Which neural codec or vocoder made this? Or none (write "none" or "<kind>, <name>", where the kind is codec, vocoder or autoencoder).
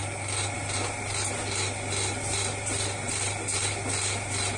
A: none